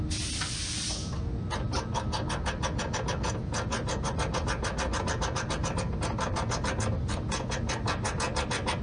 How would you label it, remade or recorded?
recorded